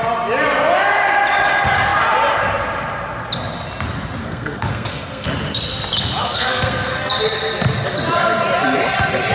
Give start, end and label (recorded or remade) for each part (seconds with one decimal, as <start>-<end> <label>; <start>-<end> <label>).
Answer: 0.0-4.2 recorded; 4.2-5.3 remade; 5.3-6.2 recorded; 6.2-7.0 remade; 7.0-9.3 recorded